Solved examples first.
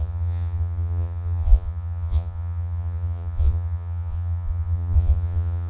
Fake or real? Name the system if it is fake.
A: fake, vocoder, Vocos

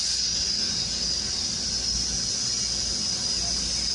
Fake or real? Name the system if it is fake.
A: real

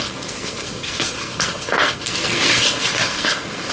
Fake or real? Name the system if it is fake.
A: fake, codec, SNAC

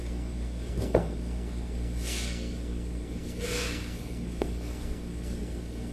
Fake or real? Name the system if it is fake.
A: fake, codec, SNAC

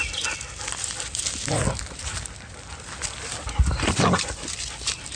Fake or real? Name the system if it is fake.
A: real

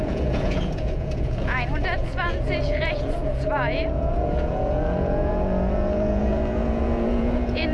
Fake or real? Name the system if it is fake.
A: fake, vocoder, Vocos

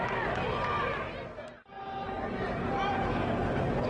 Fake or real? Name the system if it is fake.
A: real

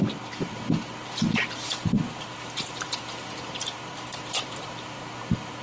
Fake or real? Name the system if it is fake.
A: fake, vocoder, BigVGAN v2